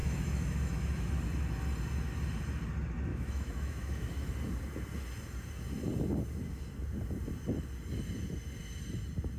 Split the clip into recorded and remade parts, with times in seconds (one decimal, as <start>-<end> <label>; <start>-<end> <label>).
0.0-1.1 remade; 1.1-3.1 recorded; 3.1-4.3 remade; 4.3-9.4 recorded